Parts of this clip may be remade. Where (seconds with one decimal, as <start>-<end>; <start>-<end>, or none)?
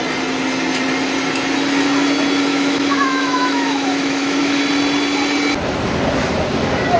2.5-4.6